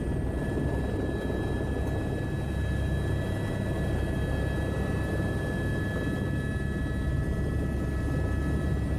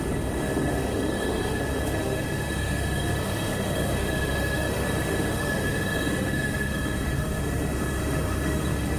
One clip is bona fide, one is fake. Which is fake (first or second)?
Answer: second